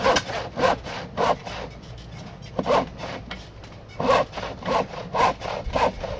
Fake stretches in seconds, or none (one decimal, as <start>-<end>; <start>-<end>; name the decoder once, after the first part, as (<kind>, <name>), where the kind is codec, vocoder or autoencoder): none